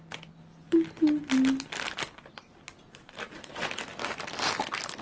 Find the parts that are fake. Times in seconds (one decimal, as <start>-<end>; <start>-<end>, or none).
none